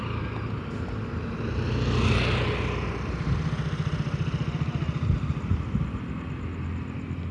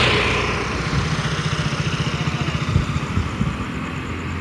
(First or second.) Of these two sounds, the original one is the second